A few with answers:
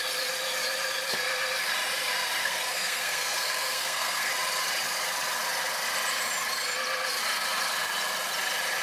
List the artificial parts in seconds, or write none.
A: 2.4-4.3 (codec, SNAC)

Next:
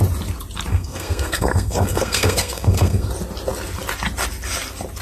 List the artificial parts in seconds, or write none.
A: 0.7-3.1 (codec, SNAC)

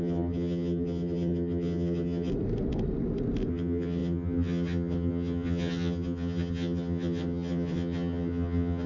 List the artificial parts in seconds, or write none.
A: 0.0-2.3 (vocoder, HiFi-GAN); 3.5-8.9

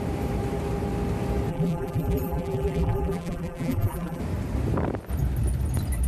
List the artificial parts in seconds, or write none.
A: 1.5-4.2 (vocoder, BigVGAN v2)

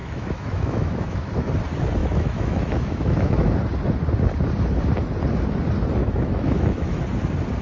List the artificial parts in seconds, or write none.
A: 0.0-1.3 (autoencoder, DAC-VAE); 2.0-3.5; 6.0-7.0

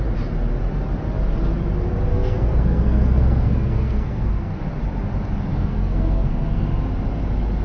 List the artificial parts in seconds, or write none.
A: 2.1-4.6 (codec, SNAC); 5.5-6.7

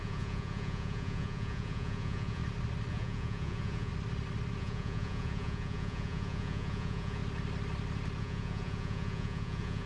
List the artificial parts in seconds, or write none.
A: 0.0-2.4 (vocoder, Vocos); 2.9-3.9; 4.6-7.2; 8.2-9.9